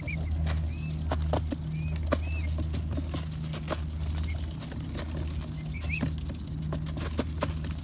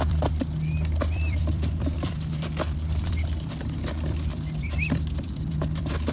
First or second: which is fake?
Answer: second